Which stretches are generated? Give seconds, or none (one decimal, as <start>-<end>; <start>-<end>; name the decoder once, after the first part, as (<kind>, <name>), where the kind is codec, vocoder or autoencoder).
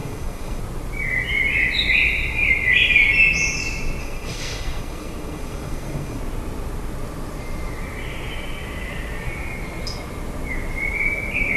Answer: 0.0-0.6 (codec, SNAC); 4.0-6.2